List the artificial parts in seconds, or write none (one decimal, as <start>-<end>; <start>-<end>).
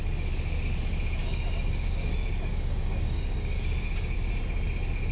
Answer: 1.2-4.3